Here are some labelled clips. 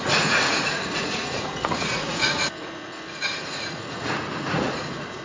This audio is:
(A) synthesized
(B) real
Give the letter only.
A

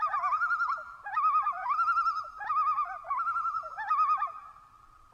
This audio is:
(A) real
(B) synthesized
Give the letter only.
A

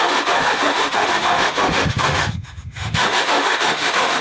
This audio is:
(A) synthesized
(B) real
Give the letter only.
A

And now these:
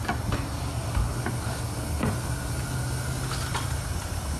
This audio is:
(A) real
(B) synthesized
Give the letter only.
A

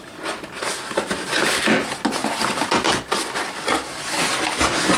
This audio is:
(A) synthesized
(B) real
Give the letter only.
B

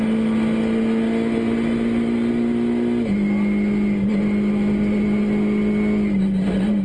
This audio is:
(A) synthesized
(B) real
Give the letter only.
B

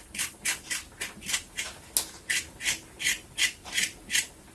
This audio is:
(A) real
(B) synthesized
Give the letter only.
A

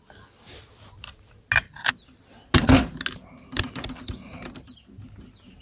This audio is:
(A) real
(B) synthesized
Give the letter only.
A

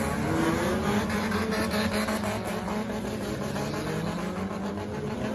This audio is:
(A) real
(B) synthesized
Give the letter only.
A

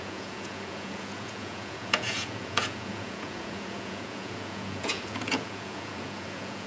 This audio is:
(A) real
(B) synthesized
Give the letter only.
B